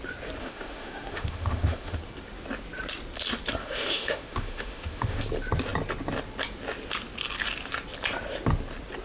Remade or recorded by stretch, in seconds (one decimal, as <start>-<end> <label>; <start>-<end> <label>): 0.0-0.4 recorded; 0.4-2.0 remade; 2.0-3.6 recorded; 3.6-5.2 remade; 5.2-9.0 recorded